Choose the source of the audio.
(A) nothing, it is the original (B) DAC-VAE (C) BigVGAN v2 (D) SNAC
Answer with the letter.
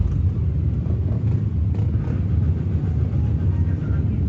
A